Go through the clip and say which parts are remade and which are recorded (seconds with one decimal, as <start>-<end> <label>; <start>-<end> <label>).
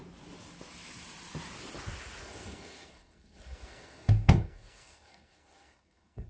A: 0.0-2.2 recorded; 2.2-6.3 remade